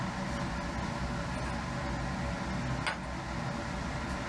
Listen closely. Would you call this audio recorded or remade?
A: recorded